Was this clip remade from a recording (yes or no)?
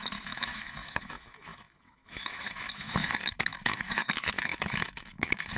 yes